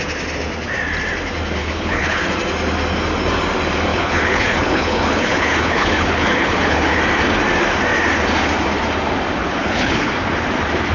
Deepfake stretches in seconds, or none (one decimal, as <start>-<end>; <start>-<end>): 1.6-2.2; 3.9-7.0; 9.4-10.1